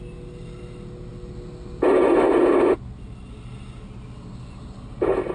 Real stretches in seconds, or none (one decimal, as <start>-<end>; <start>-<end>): 0.0-5.3